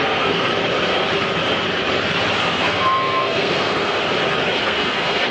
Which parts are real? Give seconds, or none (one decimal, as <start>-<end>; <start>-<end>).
0.5-2.5; 4.0-4.6